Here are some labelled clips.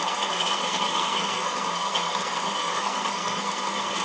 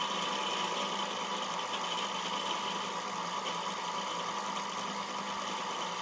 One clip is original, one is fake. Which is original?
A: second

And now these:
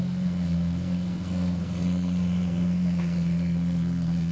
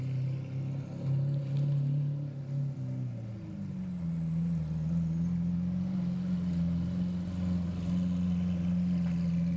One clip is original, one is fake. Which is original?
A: second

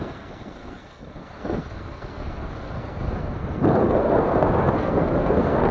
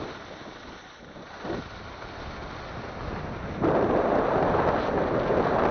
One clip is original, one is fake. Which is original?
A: second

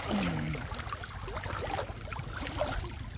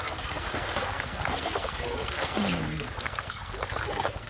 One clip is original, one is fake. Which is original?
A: first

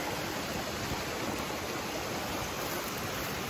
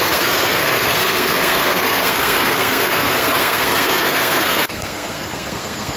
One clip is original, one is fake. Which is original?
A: first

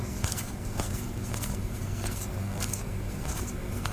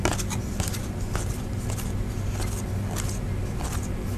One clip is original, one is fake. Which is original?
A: second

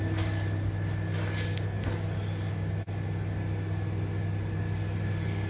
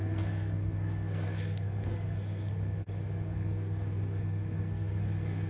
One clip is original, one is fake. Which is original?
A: first